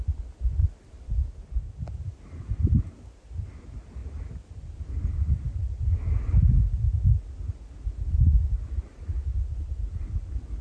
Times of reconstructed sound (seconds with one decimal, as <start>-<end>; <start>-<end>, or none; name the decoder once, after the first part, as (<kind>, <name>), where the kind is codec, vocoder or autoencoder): none